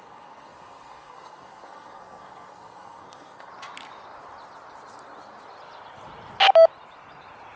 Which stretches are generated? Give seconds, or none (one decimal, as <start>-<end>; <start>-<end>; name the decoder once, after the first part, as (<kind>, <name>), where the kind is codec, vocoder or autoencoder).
0.0-3.5 (codec, SNAC)